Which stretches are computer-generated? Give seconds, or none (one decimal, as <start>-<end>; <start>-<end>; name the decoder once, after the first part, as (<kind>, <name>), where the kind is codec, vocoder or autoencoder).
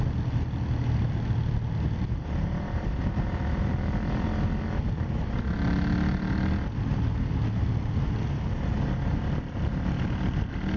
2.4-3.7 (vocoder, BigVGAN v2)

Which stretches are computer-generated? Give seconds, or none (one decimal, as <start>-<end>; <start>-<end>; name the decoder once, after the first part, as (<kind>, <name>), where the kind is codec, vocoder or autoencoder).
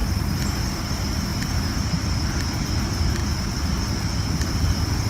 0.0-0.8 (vocoder, BigVGAN v2); 1.3-1.9; 3.2-3.8